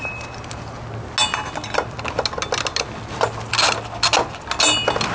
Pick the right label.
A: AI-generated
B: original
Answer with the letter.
B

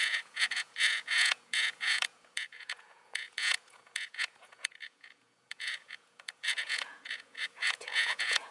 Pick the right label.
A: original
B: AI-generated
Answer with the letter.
B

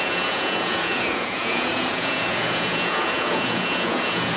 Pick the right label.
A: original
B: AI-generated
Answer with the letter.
B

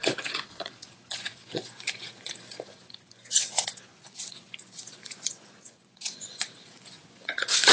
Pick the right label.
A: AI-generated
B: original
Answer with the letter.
A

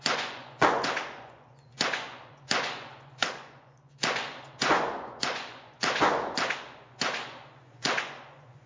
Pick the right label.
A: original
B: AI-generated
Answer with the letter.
B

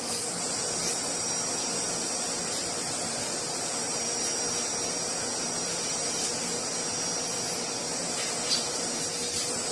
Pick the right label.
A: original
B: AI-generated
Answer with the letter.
A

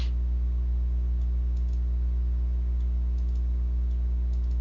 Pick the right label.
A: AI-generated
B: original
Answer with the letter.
B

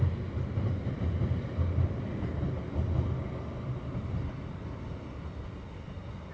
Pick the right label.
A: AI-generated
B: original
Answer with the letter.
B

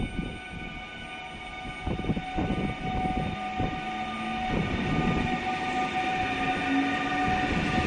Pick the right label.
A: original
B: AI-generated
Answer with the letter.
A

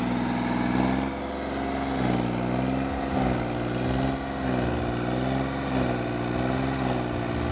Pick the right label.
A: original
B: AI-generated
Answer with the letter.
A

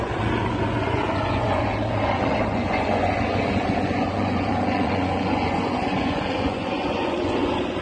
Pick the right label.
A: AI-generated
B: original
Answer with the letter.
A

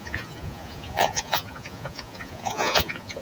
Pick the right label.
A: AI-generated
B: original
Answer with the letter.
A